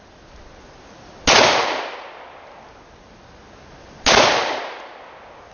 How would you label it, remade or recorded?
recorded